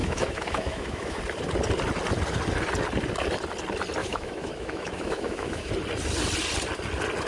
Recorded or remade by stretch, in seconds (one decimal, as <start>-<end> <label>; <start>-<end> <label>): 0.0-1.2 remade; 1.2-4.0 recorded; 4.0-5.7 remade; 5.7-7.3 recorded